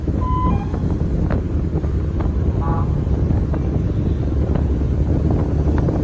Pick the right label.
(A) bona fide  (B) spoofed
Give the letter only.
A